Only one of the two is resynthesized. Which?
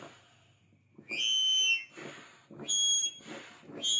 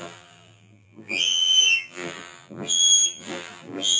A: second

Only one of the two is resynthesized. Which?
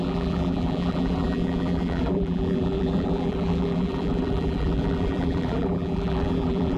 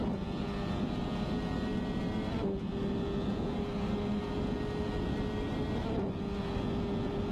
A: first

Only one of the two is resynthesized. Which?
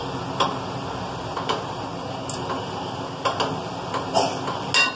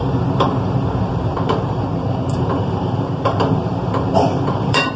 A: second